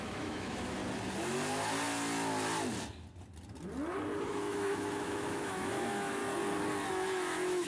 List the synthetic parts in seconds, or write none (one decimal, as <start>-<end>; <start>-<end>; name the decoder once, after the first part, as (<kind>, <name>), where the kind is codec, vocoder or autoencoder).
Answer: 0.0-0.8 (autoencoder, DAC-VAE); 4.3-6.2; 6.9-7.7